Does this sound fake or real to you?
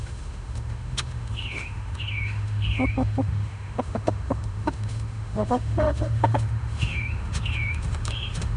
fake